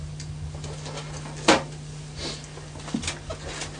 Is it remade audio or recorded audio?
remade